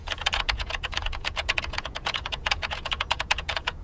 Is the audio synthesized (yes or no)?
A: yes